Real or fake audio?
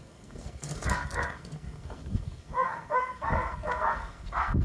fake